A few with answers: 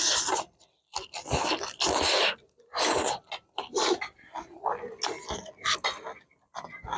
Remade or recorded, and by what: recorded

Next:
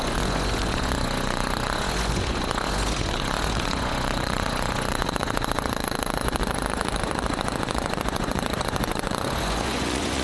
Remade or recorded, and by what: remade, vocoder, Vocos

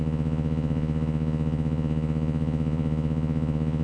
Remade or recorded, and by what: remade, vocoder, Vocos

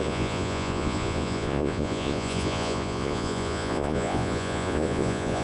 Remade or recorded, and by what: remade, vocoder, Vocos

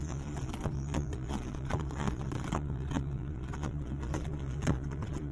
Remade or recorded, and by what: remade, vocoder, Vocos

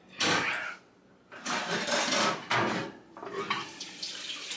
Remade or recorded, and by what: recorded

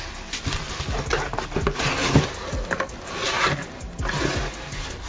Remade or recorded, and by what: recorded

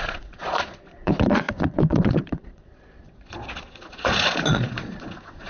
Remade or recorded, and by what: remade, vocoder, Vocos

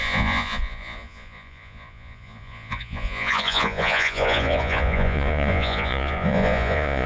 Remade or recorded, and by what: remade, vocoder, Vocos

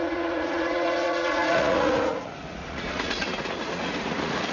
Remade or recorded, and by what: remade, vocoder, Vocos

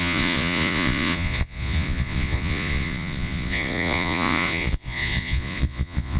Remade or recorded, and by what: remade, vocoder, Vocos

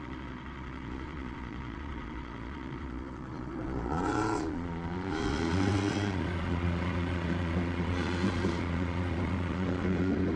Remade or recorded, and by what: remade, vocoder, Vocos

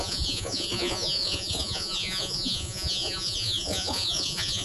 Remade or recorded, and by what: remade, vocoder, Vocos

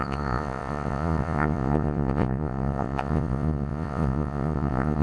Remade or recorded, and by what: remade, vocoder, Vocos